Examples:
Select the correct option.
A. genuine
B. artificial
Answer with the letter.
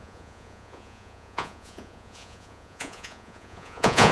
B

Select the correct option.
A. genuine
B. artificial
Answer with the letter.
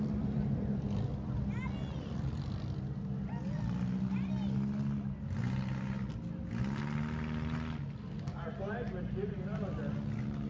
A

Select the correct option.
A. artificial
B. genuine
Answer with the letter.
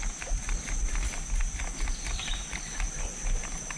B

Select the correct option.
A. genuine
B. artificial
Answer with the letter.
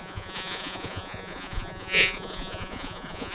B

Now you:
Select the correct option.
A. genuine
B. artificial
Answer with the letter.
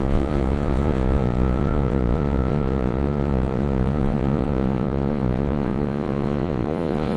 B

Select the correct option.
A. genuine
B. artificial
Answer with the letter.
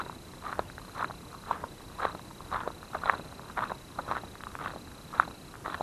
A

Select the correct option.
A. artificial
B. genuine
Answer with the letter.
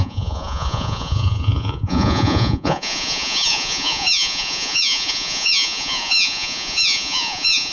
A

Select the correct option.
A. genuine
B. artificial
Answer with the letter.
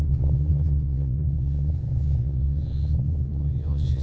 B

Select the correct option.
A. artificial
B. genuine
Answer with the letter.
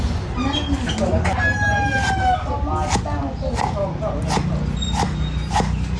B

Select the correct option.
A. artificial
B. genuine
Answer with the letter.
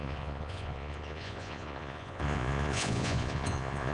A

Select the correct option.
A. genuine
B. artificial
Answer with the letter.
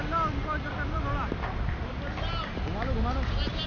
A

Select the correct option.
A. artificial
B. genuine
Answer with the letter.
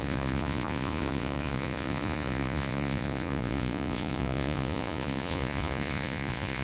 A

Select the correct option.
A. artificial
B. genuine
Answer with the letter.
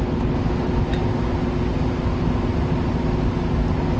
B